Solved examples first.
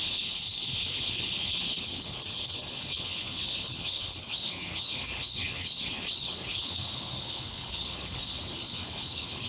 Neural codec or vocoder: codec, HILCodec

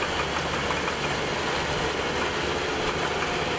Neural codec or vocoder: none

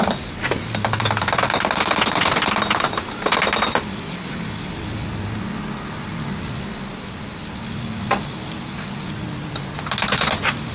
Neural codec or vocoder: none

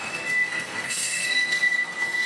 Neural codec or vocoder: codec, SNAC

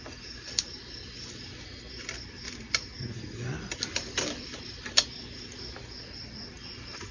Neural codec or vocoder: none